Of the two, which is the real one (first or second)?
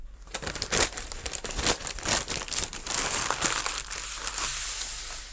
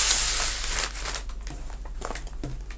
second